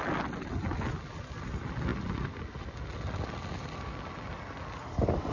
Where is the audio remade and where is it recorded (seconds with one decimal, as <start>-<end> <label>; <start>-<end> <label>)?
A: 0.0-5.3 recorded